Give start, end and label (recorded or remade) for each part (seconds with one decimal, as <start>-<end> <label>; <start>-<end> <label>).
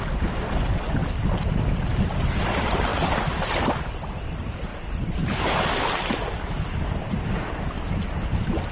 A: 0.0-8.7 recorded